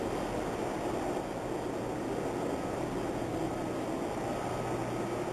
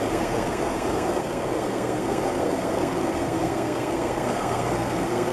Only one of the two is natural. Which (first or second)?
first